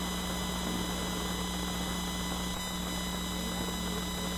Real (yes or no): yes